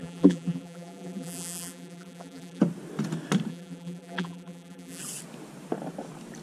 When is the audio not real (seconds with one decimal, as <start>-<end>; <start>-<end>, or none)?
0.0-2.6; 3.5-5.0